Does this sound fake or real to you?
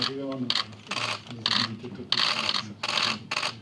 real